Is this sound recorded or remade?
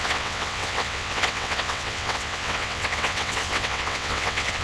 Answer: remade